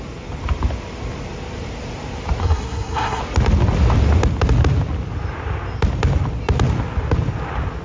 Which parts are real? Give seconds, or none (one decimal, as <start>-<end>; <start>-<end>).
0.0-2.4; 3.2-7.8